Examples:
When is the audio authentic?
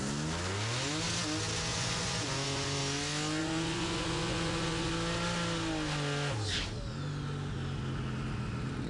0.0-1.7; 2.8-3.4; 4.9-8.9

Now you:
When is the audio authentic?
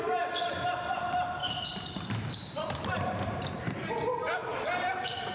0.0-1.4; 3.4-4.5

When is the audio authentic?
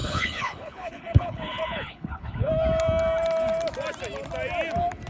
2.5-5.1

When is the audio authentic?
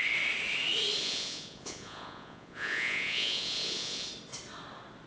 0.0-1.0; 4.1-5.1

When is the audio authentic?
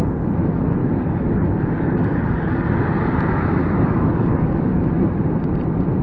0.0-0.8; 2.7-3.6; 4.8-6.0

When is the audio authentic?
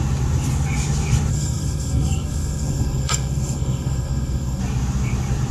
0.0-1.3; 4.6-5.5